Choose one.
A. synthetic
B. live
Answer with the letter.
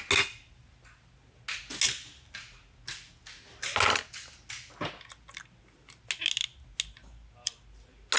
B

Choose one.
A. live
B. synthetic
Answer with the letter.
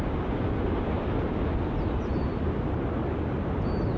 A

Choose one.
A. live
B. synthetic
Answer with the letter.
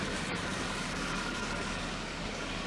B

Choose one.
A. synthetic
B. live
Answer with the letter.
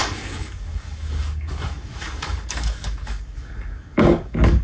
A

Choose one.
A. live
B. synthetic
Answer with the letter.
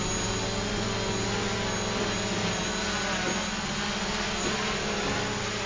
A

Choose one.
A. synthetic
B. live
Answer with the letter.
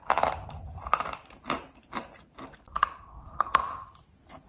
B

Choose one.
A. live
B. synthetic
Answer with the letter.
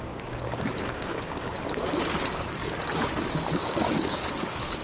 B